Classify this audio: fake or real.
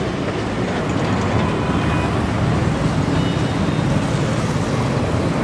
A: real